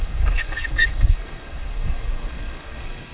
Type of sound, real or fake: fake